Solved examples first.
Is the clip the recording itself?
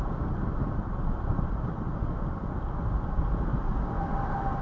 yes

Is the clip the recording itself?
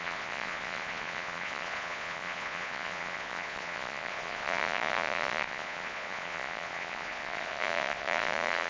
no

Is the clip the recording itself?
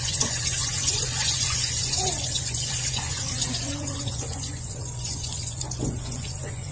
no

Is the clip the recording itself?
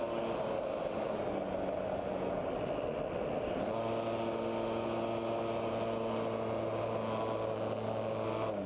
yes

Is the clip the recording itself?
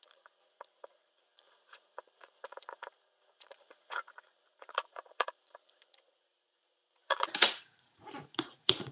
no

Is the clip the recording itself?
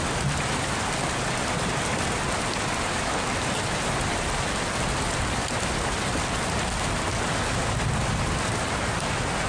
yes